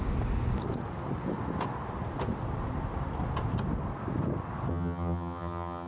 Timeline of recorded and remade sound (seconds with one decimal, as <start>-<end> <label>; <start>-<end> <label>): 0.0-4.7 recorded; 4.7-5.9 remade